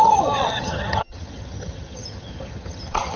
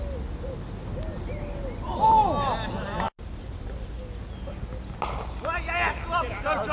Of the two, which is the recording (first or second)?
second